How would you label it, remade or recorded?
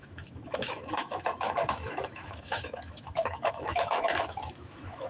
remade